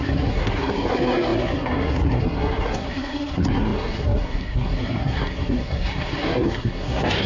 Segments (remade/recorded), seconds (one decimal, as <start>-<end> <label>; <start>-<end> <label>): 0.0-7.3 remade